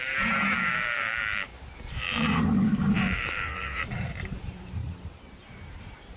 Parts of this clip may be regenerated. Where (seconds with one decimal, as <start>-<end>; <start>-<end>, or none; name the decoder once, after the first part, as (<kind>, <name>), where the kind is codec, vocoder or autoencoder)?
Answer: 0.0-4.8 (vocoder, BigVGAN v2); 5.4-6.2